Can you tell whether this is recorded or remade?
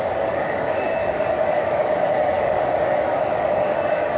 remade